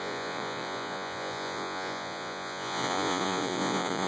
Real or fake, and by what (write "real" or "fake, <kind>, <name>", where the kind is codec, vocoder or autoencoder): fake, vocoder, Vocos